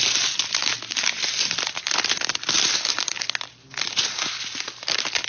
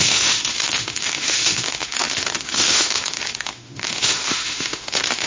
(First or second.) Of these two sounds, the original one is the first